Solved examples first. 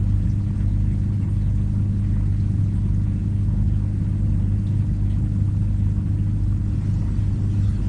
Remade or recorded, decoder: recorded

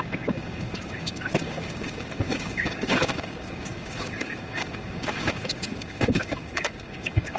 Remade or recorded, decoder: remade, codec, DAC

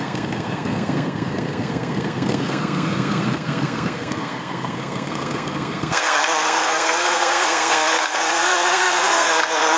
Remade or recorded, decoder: remade, codec, SNAC